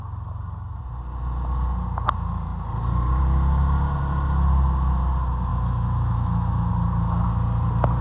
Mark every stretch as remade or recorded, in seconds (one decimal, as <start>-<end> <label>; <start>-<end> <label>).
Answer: 0.0-5.5 recorded; 5.5-6.7 remade; 6.7-8.0 recorded